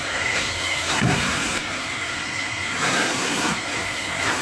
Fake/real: fake